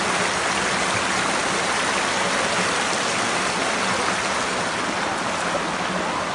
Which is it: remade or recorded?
recorded